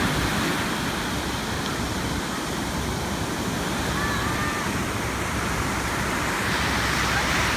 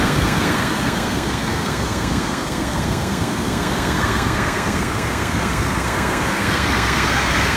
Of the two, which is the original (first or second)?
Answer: first